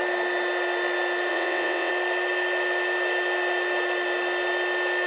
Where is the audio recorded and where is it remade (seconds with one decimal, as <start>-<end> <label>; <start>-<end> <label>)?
0.0-1.3 recorded; 1.3-1.9 remade; 1.9-5.1 recorded